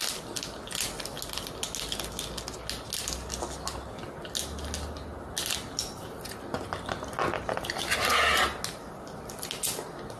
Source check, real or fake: real